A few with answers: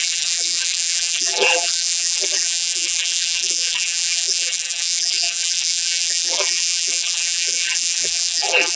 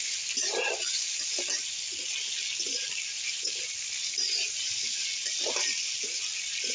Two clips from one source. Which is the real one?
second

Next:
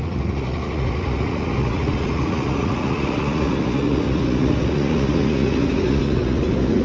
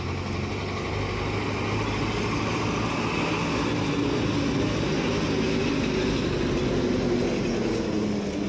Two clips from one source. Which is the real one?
second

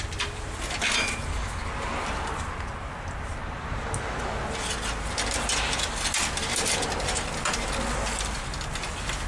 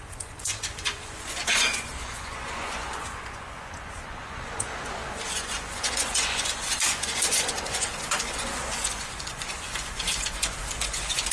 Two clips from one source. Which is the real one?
first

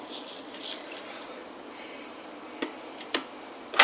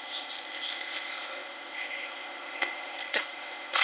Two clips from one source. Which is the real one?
first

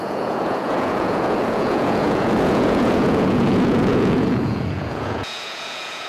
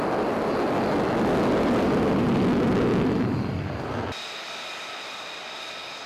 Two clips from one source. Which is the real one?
second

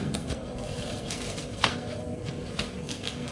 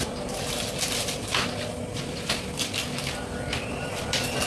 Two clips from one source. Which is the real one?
second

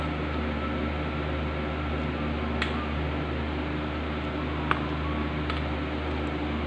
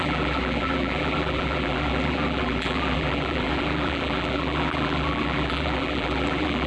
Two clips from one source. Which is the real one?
first